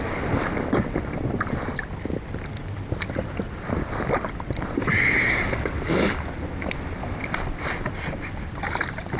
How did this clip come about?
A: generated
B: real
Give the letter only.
B